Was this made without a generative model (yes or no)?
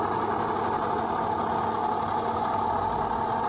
yes